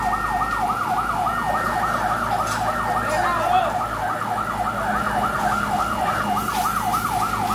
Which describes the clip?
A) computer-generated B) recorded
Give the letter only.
B